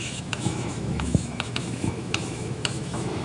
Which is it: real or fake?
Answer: fake